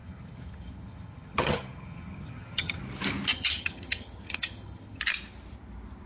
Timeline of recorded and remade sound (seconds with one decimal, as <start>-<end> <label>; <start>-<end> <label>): 0.0-2.8 remade; 2.8-3.3 recorded; 3.3-5.0 remade; 5.0-6.1 recorded

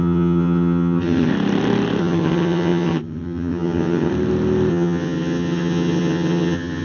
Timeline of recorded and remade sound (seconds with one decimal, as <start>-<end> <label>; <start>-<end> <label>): 0.0-1.3 remade; 1.3-2.0 recorded; 2.0-4.1 remade; 4.1-4.7 recorded; 4.7-6.8 remade

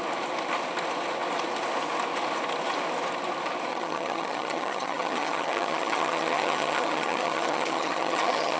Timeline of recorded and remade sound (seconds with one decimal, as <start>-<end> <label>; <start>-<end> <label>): 0.0-3.7 recorded; 3.7-8.6 remade

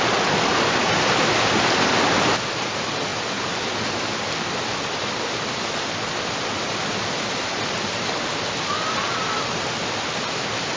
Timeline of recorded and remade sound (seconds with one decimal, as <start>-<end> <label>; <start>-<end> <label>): 0.0-10.8 recorded

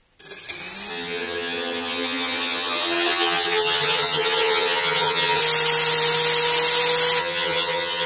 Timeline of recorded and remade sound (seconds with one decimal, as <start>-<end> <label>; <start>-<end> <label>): 0.0-0.9 recorded; 0.9-5.4 remade; 5.4-7.2 recorded; 7.2-8.1 remade

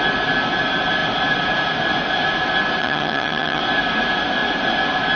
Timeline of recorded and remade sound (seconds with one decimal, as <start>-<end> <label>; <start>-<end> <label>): 0.0-2.8 recorded; 2.8-3.6 remade; 3.6-5.2 recorded